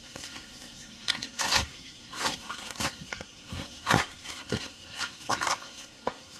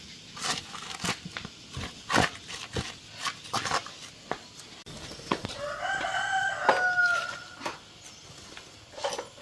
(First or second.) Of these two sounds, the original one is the second